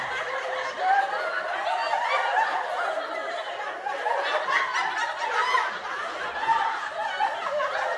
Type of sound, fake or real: real